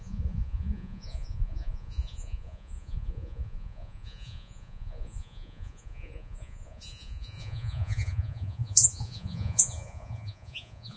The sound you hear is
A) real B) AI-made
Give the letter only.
B